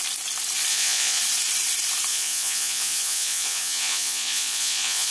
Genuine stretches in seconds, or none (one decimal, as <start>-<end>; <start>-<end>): 0.0-0.7; 1.2-2.1